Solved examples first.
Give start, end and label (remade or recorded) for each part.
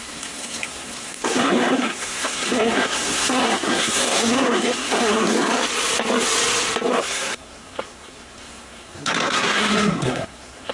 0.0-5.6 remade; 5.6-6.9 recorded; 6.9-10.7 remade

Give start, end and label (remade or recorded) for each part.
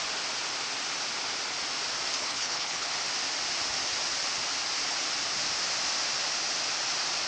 0.0-2.2 recorded; 2.2-2.9 remade; 2.9-7.3 recorded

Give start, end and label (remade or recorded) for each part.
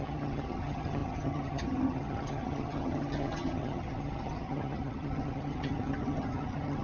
0.0-6.8 remade